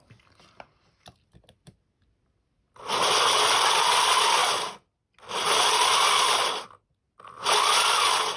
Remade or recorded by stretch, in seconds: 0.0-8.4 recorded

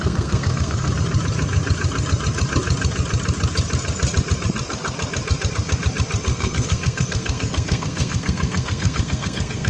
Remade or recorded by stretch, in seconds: 0.0-0.9 remade; 0.9-6.3 recorded; 6.3-9.7 remade